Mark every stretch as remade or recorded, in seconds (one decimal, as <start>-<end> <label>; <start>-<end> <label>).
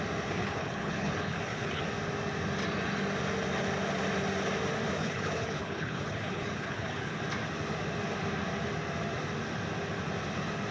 0.0-0.4 recorded; 0.4-1.8 remade; 1.8-5.0 recorded; 5.0-7.2 remade; 7.2-10.7 recorded